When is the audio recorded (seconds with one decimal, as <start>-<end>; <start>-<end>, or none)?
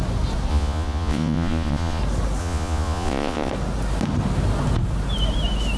0.0-0.5; 2.0-2.4; 3.5-5.8